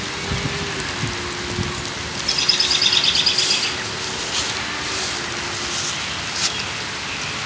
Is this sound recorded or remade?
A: recorded